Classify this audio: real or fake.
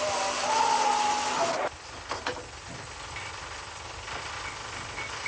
real